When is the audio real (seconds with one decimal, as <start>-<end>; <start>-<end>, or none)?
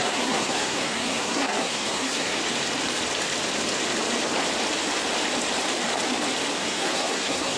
2.4-6.6